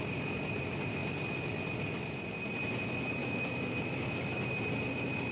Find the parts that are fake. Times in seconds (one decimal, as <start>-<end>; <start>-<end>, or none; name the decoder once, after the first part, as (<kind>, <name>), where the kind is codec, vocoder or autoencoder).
3.2-4.5 (autoencoder, DAC-VAE)